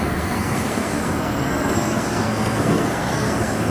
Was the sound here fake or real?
fake